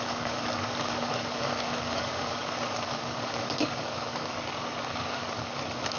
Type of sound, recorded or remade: remade